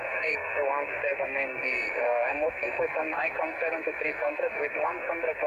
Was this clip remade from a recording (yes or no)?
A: yes